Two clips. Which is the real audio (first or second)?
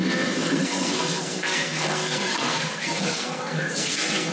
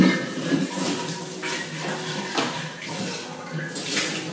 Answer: second